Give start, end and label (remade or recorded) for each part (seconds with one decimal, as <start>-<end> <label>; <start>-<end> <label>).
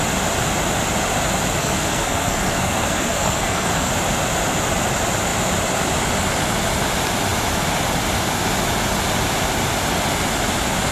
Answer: 0.0-1.6 recorded; 1.6-3.9 remade; 3.9-10.9 recorded